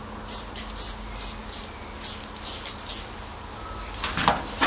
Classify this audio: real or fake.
real